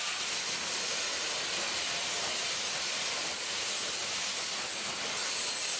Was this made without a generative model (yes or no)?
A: yes